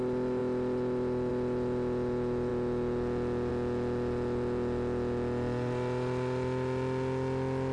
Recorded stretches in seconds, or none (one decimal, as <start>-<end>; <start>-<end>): 0.0-7.7